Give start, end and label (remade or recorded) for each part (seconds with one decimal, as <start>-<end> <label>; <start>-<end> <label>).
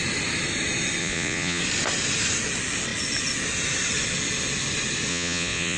0.0-1.0 recorded; 1.0-1.6 remade; 1.6-5.1 recorded; 5.1-5.8 remade